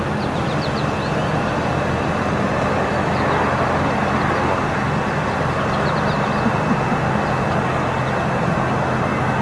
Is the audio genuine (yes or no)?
yes